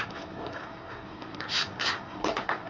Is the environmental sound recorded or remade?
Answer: remade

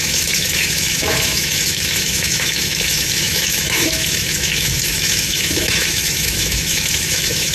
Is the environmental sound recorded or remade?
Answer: remade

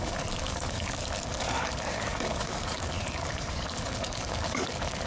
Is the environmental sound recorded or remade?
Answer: remade